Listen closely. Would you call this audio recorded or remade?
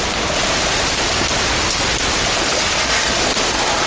recorded